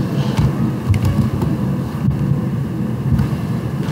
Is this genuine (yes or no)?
yes